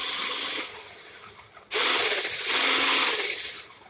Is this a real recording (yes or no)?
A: yes